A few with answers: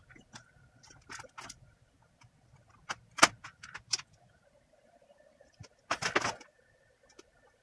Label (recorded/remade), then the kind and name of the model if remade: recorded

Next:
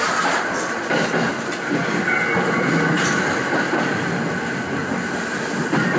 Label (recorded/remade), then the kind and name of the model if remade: recorded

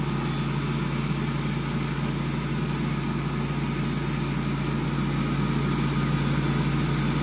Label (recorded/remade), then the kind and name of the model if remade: recorded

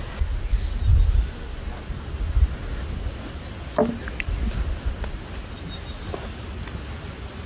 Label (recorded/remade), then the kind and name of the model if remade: recorded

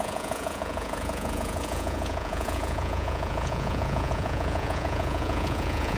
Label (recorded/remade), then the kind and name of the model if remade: remade, vocoder, Vocos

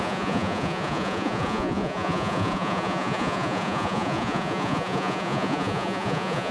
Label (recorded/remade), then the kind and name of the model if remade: remade, vocoder, Vocos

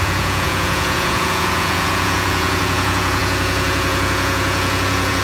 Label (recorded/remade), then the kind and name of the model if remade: remade, vocoder, Vocos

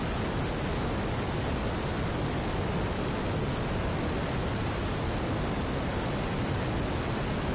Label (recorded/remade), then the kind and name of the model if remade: recorded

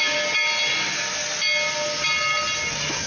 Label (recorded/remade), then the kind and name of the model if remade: recorded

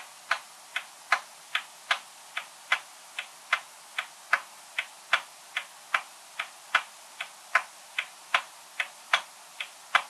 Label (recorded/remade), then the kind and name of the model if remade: recorded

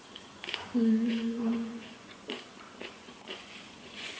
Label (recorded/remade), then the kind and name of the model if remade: remade, vocoder, Vocos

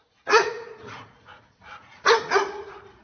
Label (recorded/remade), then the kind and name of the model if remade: remade, vocoder, Vocos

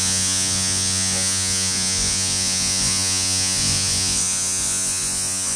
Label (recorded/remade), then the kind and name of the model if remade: remade, vocoder, Vocos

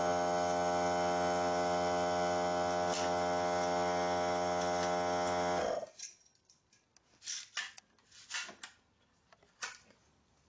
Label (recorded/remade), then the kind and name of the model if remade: recorded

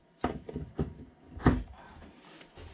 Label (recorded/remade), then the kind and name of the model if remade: recorded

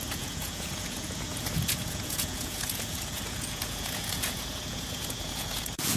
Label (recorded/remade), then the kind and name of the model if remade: remade, vocoder, Vocos